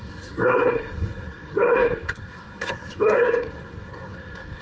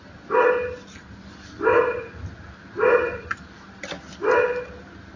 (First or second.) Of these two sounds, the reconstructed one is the first